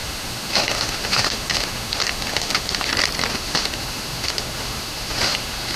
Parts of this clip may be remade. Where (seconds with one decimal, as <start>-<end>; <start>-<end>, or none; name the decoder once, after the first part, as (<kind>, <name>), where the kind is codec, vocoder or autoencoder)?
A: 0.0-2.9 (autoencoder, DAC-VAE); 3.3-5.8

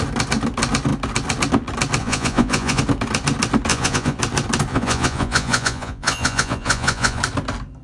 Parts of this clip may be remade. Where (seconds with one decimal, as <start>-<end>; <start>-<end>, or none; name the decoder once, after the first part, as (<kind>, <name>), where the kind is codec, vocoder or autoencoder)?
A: 2.0-2.8 (vocoder, Vocos); 3.7-4.2; 4.7-7.2

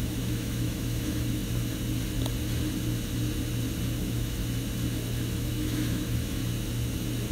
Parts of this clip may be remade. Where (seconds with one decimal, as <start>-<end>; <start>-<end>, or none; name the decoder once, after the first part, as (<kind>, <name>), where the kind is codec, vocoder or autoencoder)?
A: 0.0-1.4 (autoencoder, DAC-VAE); 4.0-4.4; 5.3-6.4

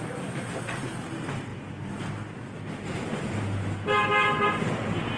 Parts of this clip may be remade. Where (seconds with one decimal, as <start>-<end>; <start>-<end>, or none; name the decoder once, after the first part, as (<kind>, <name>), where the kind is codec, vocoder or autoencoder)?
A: none